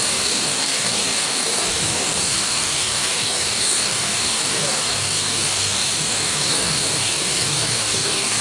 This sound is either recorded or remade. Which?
remade